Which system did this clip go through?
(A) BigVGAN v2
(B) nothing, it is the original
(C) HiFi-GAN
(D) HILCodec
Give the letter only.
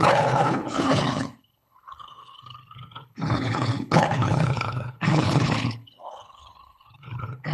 D